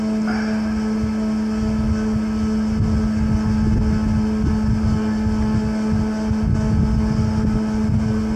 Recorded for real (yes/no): yes